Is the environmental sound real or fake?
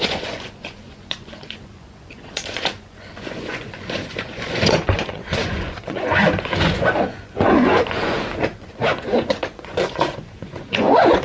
fake